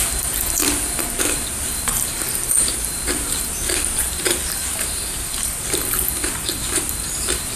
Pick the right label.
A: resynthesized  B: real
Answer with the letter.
A